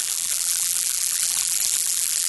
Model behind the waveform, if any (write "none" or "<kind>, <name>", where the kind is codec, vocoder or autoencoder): vocoder, BigVGAN v2